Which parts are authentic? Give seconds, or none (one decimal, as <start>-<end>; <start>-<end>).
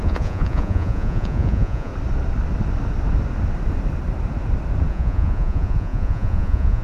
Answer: 1.9-4.9